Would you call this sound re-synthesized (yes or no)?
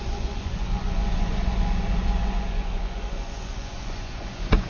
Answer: yes